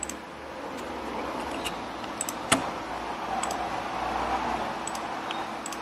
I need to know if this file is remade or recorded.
recorded